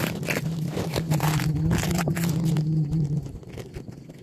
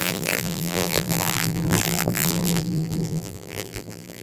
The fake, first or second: second